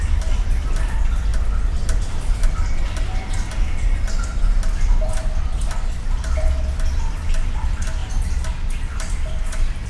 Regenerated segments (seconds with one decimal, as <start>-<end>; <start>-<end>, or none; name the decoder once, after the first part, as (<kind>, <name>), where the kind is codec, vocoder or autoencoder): none